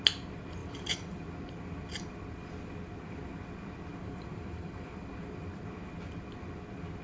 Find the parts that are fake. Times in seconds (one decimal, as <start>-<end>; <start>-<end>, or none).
0.6-1.2; 3.9-5.1